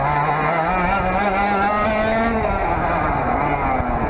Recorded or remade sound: recorded